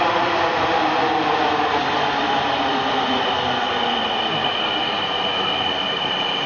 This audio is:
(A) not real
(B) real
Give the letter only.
B